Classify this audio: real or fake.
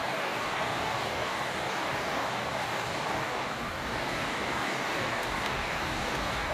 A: fake